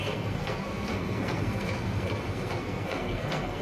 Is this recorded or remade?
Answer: remade